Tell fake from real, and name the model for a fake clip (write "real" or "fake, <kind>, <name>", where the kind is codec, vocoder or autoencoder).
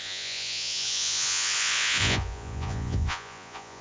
fake, vocoder, Vocos